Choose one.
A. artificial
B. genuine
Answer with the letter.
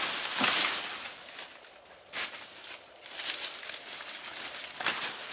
B